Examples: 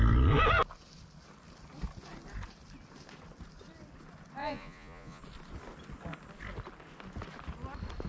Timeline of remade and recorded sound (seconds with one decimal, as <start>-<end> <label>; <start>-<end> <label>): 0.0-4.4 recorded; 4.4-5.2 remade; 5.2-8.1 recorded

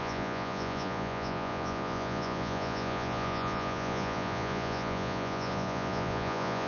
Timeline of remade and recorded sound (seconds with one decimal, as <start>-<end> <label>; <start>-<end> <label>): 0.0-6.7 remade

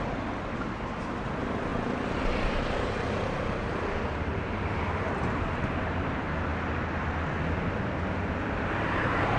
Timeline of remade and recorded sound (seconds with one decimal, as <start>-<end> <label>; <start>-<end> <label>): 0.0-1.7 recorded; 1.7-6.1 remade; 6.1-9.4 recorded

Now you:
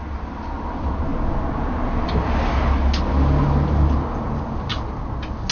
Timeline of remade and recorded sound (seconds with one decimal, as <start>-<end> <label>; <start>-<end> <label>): 0.0-5.5 recorded